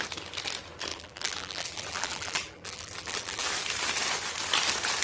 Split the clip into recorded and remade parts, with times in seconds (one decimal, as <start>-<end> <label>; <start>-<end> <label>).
0.0-0.9 recorded; 0.9-3.5 remade; 3.5-5.0 recorded